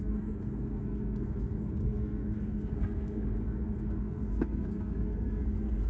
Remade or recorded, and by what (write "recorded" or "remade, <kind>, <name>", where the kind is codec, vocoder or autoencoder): remade, codec, SNAC